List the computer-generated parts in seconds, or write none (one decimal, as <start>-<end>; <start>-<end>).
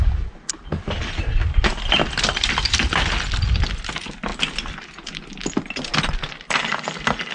1.7-2.9